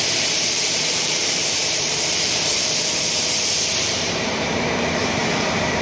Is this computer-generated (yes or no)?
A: yes